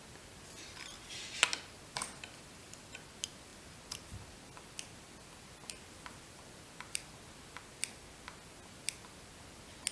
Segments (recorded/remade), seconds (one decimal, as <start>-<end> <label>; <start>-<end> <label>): 0.0-9.9 recorded